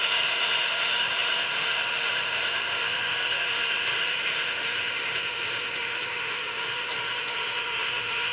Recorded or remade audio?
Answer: remade